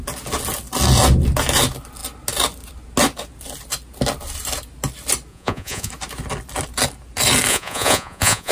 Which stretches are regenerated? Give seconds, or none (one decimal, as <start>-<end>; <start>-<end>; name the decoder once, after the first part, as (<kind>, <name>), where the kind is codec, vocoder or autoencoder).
5.3-5.9 (vocoder, Vocos); 7.5-8.5